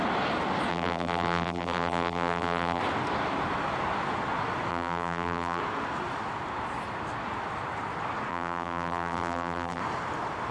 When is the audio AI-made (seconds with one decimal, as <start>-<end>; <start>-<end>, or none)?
0.7-2.8; 4.7-5.6; 8.3-9.8